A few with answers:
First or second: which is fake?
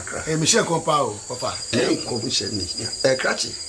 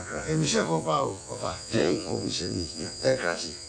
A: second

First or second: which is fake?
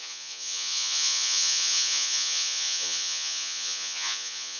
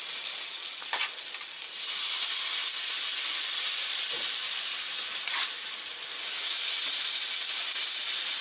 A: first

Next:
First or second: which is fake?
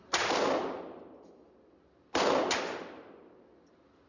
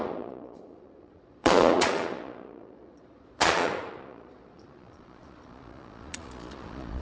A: second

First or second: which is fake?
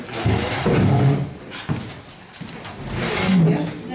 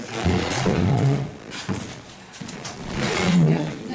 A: second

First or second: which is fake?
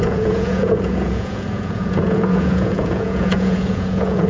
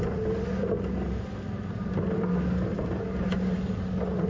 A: first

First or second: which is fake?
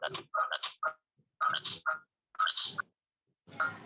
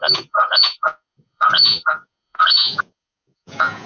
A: second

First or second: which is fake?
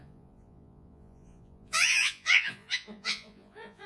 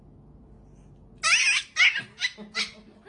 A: first